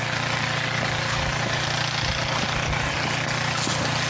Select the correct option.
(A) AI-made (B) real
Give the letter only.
B